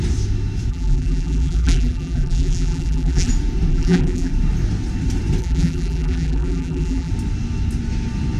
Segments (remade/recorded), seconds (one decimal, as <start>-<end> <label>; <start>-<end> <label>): 0.0-0.7 recorded; 0.7-3.3 remade; 3.3-3.7 recorded; 3.7-4.3 remade; 4.3-5.4 recorded; 5.4-7.1 remade; 7.1-8.4 recorded